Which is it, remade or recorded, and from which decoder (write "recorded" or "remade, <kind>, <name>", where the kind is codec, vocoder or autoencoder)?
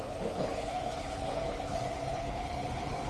remade, codec, HILCodec